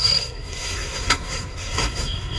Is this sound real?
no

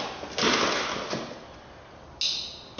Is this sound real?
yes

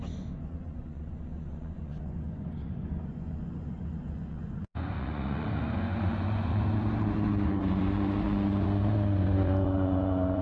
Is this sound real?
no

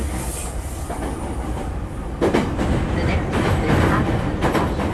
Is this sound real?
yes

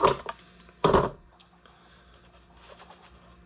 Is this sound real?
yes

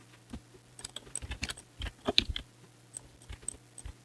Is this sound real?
yes